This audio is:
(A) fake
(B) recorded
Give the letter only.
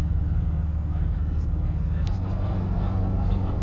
A